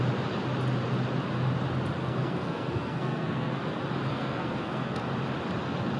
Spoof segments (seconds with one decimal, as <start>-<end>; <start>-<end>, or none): 2.0-3.6; 4.1-5.0